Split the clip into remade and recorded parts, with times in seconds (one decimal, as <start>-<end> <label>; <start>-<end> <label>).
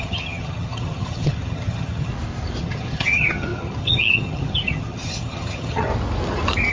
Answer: 0.0-2.1 remade; 2.1-2.6 recorded; 2.6-5.9 remade; 5.9-6.7 recorded